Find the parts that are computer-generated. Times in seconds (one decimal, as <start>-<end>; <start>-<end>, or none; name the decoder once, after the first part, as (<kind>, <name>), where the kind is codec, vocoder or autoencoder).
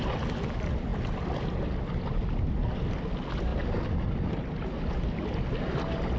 none